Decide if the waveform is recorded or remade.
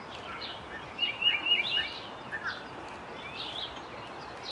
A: recorded